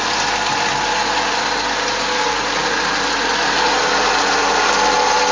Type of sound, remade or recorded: recorded